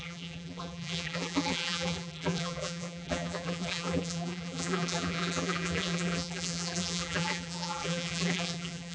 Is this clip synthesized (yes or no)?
yes